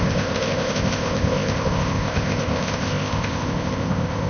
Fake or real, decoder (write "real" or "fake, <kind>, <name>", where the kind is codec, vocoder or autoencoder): fake, codec, ZipCodec